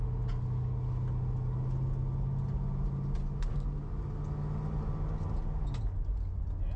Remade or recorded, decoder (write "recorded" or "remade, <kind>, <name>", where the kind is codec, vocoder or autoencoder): recorded